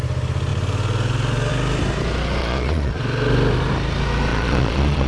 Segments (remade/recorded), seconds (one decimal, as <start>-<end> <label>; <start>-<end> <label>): 0.0-2.4 recorded; 2.4-3.0 remade; 3.0-4.3 recorded; 4.3-5.1 remade